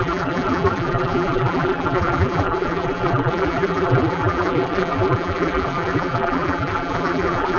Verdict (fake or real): fake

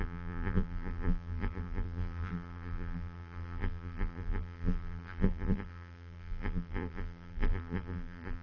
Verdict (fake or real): fake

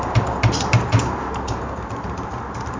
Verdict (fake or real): fake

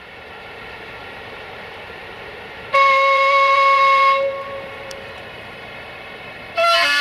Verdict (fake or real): fake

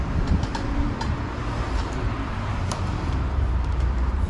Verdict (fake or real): fake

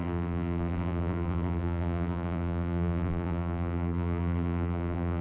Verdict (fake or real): fake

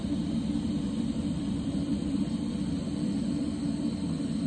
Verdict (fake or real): fake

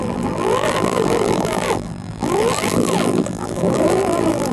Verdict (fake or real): fake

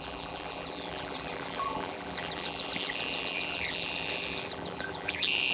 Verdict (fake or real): fake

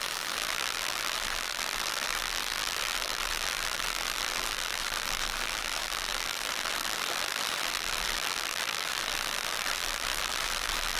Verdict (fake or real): fake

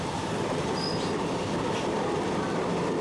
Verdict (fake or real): fake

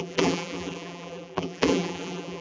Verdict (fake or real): fake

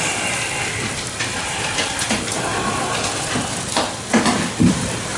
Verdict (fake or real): fake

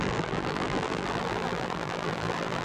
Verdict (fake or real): fake